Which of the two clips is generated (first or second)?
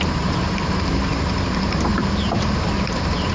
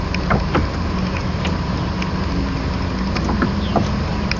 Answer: first